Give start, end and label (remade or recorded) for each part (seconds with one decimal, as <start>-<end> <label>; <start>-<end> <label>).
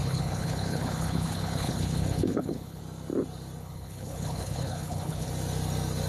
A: 0.0-2.8 remade; 2.8-3.6 recorded; 3.6-5.3 remade; 5.3-6.1 recorded